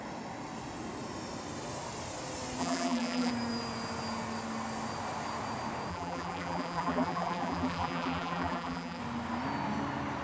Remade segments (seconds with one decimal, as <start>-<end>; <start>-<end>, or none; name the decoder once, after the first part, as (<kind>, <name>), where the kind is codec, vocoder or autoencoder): 2.6-3.3 (vocoder, BigVGAN v2); 5.9-9.0